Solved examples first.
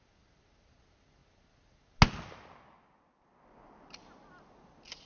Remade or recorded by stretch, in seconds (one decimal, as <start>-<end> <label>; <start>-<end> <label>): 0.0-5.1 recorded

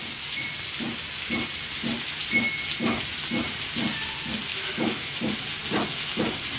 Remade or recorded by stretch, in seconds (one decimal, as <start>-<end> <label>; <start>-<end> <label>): 0.0-4.5 recorded; 4.5-5.3 remade; 5.3-6.6 recorded

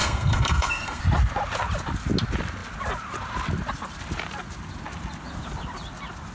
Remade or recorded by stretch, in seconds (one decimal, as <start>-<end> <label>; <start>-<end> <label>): 0.0-1.0 remade; 1.0-6.3 recorded

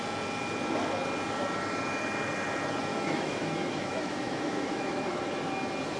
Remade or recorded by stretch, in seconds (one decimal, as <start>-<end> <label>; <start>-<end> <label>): 0.0-2.9 recorded; 2.9-5.2 remade; 5.2-6.0 recorded

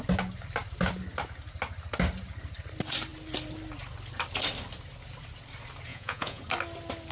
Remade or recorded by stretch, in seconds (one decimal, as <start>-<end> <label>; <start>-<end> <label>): 0.0-5.9 recorded; 5.9-6.4 remade; 6.4-7.1 recorded